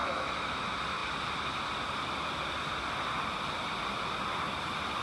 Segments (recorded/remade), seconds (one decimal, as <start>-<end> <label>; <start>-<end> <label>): 0.0-0.6 remade; 0.6-5.0 recorded